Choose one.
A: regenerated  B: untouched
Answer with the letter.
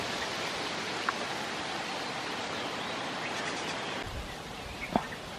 B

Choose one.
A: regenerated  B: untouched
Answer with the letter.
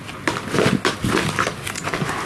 B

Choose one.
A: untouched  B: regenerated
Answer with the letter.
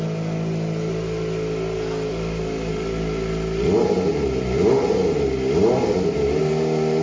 A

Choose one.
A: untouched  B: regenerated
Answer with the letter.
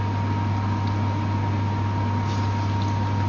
A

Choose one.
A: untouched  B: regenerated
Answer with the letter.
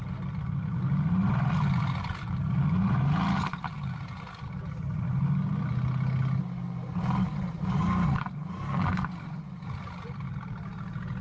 A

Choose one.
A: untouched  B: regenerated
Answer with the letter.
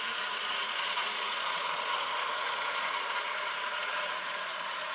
B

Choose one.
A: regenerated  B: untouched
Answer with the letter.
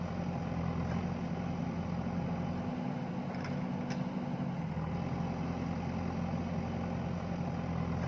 B